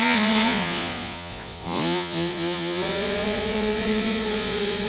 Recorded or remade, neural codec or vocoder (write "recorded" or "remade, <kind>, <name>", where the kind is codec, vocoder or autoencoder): remade, vocoder, Vocos